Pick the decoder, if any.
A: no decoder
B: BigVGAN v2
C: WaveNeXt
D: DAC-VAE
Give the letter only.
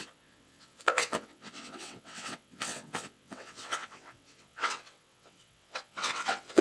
C